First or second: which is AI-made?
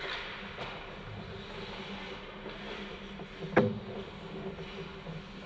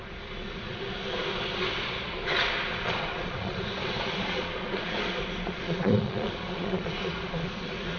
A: second